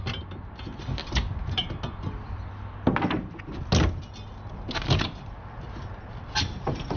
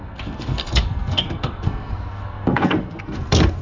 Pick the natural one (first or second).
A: first